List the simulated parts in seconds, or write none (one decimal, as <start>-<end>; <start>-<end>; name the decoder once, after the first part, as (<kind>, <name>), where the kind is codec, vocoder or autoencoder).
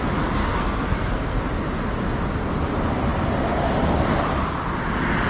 0.4-1.4 (codec, SNAC)